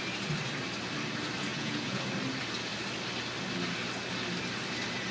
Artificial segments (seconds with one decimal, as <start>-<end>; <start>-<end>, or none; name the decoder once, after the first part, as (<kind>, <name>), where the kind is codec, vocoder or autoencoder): 1.5-2.0 (vocoder, Vocos)

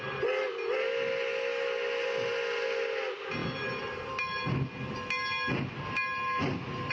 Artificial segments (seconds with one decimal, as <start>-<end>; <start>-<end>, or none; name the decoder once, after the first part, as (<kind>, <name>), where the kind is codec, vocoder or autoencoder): none

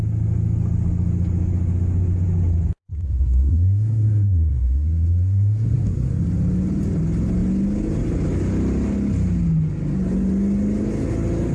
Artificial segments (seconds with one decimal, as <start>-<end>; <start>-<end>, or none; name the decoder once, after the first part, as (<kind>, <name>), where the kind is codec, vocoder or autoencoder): 2.8-6.1 (codec, SNAC)

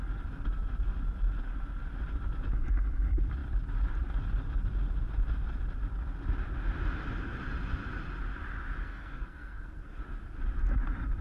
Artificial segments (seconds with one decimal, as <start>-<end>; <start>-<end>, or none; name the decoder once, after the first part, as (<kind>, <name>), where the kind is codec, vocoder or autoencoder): 8.8-10.0 (codec, SNAC)

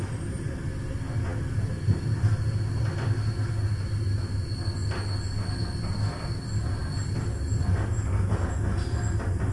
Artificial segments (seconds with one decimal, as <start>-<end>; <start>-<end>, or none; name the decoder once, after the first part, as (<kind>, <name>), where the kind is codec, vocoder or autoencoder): none

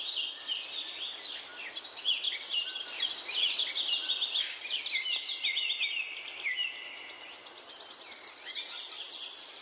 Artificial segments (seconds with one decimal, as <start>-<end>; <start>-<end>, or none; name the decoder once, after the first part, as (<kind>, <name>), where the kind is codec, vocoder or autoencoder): none